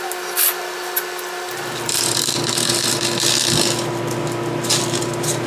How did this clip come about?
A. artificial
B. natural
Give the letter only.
B